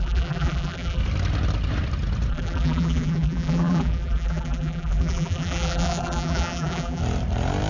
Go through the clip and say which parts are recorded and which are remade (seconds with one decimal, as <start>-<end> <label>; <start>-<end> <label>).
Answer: 0.0-1.0 remade; 1.0-2.3 recorded; 2.3-7.0 remade; 7.0-7.7 recorded